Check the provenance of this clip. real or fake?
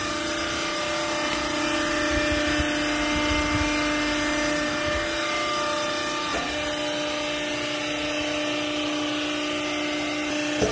real